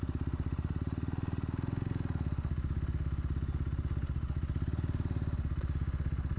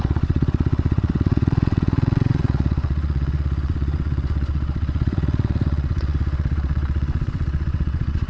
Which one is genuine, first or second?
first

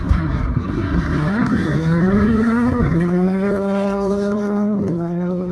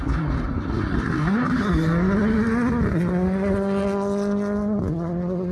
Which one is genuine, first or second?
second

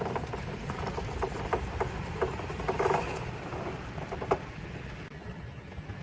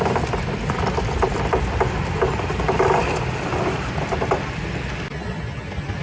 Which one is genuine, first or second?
second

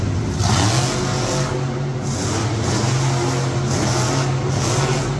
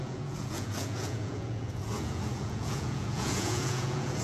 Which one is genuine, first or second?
first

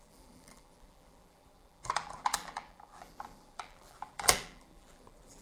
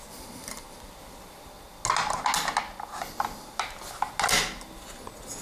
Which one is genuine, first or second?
second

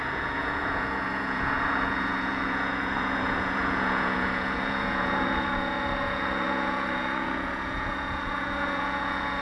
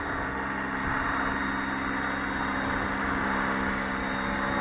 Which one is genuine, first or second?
second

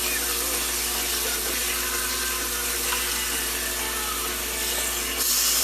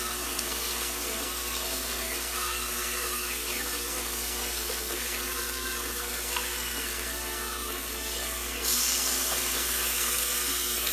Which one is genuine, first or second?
first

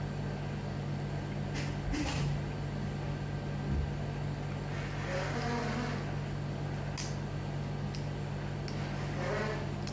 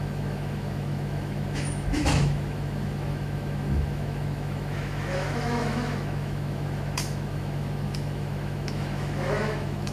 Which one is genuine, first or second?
first